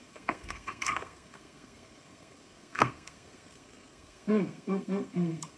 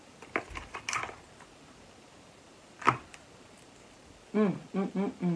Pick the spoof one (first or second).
first